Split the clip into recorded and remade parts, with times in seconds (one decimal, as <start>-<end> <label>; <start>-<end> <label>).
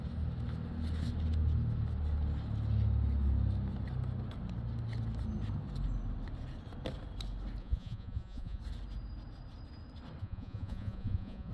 0.0-7.6 recorded; 7.6-8.6 remade; 8.6-10.2 recorded; 10.2-11.5 remade